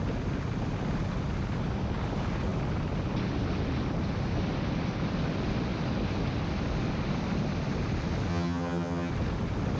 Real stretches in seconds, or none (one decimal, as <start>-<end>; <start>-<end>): 0.0-8.3; 9.1-9.8